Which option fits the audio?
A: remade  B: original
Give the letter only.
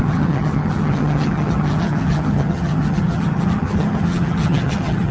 A